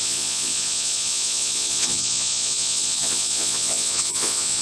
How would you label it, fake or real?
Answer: fake